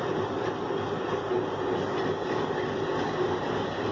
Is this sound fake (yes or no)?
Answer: no